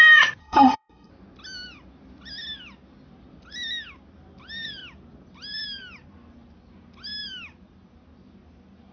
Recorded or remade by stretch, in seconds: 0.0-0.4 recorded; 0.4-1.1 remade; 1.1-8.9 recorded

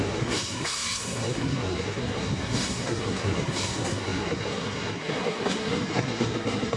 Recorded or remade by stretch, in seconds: 0.0-6.8 remade

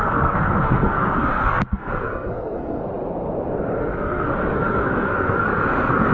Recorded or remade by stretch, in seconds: 0.0-2.8 remade; 2.8-3.8 recorded; 3.8-6.1 remade

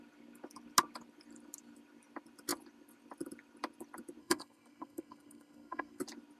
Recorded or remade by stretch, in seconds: 0.0-4.2 recorded; 4.2-6.0 remade; 6.0-6.4 recorded

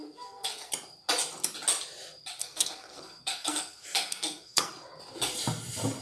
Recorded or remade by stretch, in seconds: 0.0-0.7 remade; 0.7-2.4 recorded; 2.4-4.7 remade; 4.7-6.0 recorded

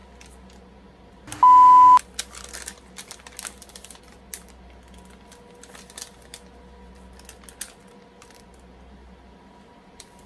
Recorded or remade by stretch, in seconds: 0.0-10.3 recorded

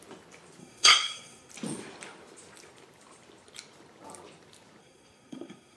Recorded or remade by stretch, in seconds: 0.0-0.6 recorded; 0.6-1.5 remade; 1.5-4.8 recorded; 4.8-5.8 remade